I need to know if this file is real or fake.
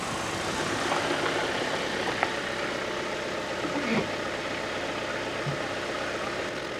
real